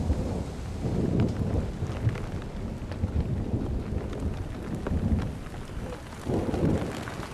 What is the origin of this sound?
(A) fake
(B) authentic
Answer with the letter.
B